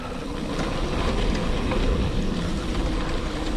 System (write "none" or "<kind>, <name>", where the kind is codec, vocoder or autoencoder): none